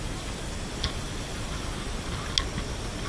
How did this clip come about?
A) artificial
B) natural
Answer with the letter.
B